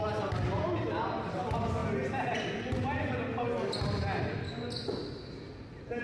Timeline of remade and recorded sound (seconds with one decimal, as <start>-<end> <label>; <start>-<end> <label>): 0.0-6.0 recorded